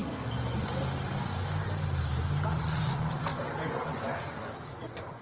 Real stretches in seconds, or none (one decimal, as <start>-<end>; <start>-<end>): 0.0-2.5